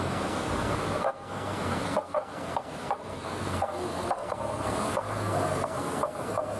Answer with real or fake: fake